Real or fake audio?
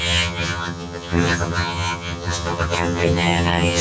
fake